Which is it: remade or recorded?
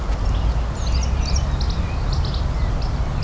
recorded